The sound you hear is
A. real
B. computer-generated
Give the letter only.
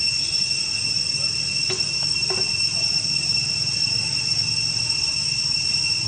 A